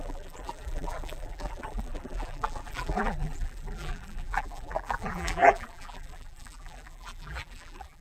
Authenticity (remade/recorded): remade